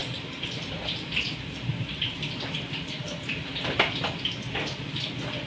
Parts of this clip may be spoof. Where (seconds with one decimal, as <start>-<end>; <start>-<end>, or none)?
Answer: none